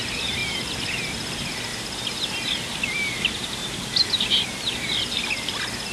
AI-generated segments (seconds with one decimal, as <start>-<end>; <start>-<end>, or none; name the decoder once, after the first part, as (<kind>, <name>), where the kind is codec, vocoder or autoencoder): none